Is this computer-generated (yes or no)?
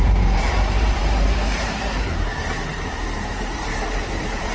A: yes